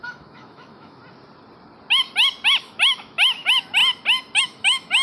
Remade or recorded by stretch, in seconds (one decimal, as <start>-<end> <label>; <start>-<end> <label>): 0.0-1.0 remade; 1.0-2.6 recorded; 2.6-3.8 remade; 3.8-4.4 recorded; 4.4-5.0 remade